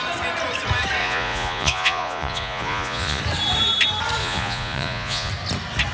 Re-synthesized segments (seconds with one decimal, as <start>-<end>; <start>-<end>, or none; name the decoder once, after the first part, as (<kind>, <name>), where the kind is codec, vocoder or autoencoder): 1.0-3.2 (vocoder, Vocos); 4.2-5.3